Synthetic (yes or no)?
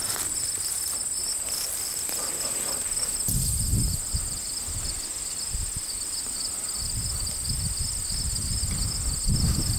no